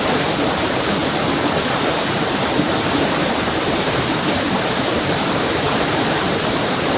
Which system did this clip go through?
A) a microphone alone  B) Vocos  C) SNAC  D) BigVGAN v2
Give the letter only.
D